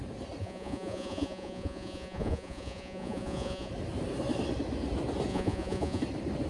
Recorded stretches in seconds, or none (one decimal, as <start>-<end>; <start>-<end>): 0.0-0.4; 3.7-5.3; 6.0-6.5